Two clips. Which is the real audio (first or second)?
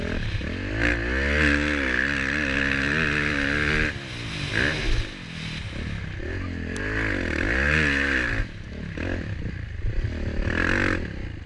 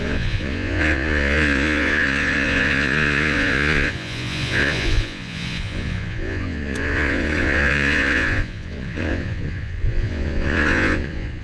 first